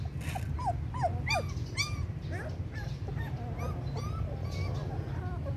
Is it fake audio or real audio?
real